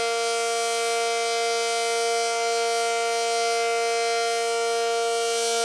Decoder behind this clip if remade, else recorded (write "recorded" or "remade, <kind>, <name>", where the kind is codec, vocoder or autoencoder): recorded